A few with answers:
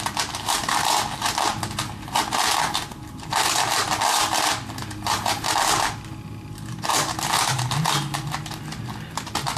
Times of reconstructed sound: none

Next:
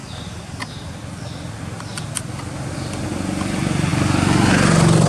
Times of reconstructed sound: none

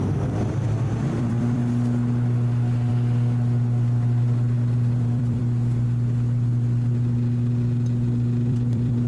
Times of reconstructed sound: 0.0-1.6 (vocoder, BigVGAN v2); 2.9-5.4; 8.5-9.1

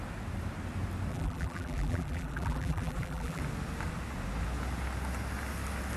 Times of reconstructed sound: 1.1-3.4 (vocoder, BigVGAN v2)

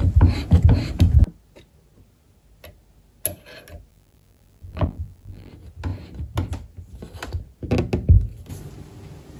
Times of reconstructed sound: 3.9-5.5 (vocoder, BigVGAN v2)